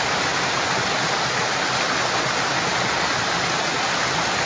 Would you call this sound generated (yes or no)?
no